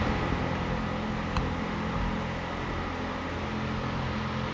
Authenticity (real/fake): real